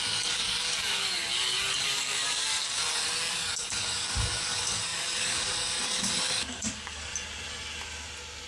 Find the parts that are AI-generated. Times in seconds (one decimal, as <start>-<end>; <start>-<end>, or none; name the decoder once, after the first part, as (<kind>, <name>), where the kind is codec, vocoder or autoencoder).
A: 0.0-2.8 (codec, DAC); 3.3-7.1